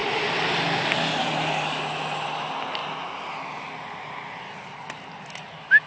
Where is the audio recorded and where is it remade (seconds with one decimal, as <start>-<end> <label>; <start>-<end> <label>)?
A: 0.0-5.9 recorded